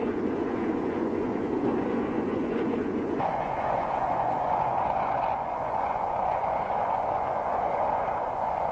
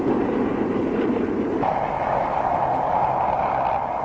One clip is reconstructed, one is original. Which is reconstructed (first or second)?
first